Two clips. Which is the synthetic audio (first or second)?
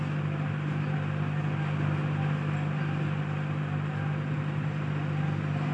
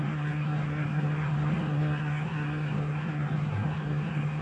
second